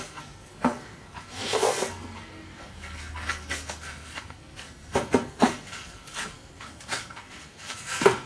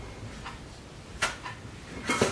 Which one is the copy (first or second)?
first